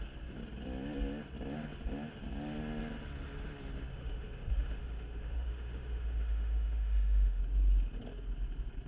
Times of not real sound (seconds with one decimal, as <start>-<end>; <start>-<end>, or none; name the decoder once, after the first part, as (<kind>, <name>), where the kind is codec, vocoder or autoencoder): 3.9-7.4 (autoencoder, DAC-VAE)